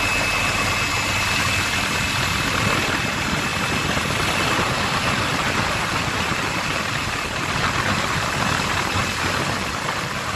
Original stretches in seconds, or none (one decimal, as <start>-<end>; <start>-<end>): 0.0-10.4